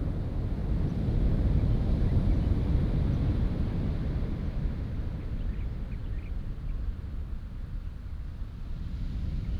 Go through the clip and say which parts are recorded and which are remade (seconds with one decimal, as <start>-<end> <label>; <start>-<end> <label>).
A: 0.0-9.6 recorded